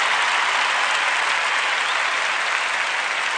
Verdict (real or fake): real